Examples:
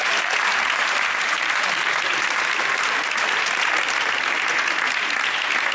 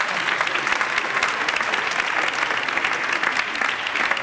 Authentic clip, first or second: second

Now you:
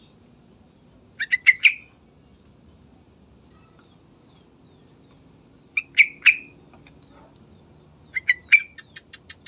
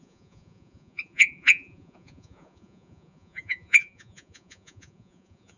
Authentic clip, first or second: first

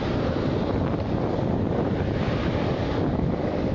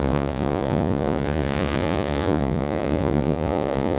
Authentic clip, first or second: first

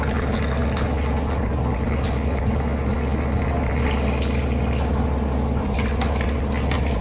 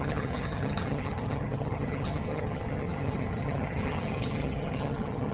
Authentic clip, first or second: first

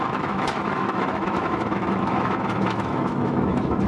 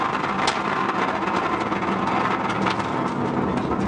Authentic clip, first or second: second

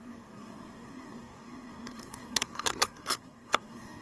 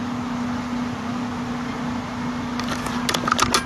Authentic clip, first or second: second